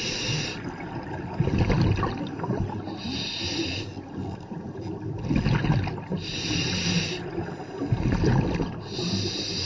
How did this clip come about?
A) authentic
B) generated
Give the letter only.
A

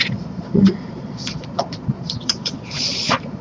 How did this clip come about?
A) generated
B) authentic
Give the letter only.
A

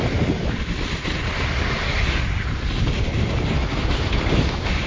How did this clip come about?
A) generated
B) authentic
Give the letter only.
B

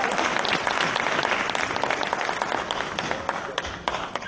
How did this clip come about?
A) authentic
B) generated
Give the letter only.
A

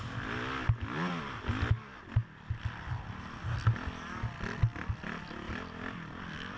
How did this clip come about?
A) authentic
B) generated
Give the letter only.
A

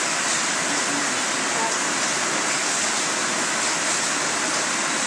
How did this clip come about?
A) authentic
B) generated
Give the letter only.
A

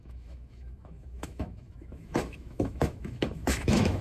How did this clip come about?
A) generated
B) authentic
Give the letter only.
A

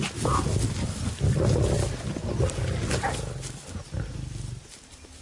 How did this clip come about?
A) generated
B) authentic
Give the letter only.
B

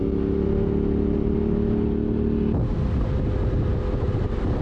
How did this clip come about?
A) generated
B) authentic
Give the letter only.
B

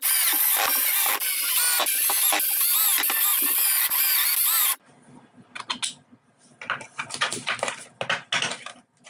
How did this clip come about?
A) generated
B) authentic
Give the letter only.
B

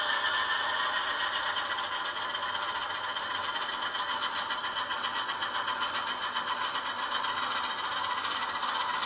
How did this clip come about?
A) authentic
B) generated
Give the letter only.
A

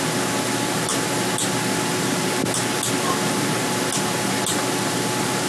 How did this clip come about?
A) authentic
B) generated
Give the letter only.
A